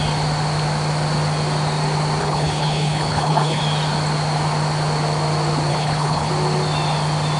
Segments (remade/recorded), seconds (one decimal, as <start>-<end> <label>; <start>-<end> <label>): 0.0-2.2 recorded; 2.2-3.6 remade; 3.6-5.7 recorded; 5.7-6.3 remade; 6.3-7.4 recorded